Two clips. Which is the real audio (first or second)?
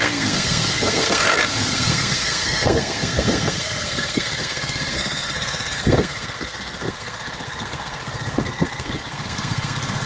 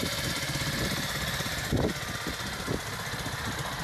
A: second